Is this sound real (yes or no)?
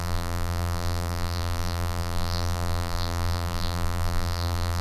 no